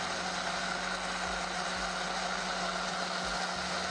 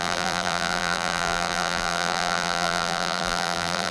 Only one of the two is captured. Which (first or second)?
first